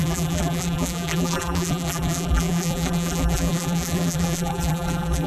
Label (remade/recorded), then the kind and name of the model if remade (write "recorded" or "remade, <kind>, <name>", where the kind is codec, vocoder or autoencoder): remade, vocoder, BigVGAN v2